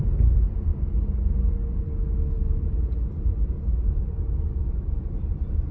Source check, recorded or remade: recorded